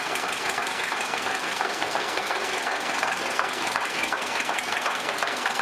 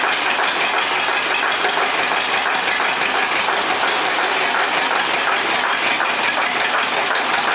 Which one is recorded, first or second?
second